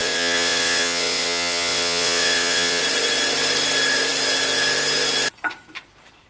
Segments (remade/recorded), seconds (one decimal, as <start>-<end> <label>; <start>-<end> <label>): 0.0-2.8 remade; 2.8-6.3 recorded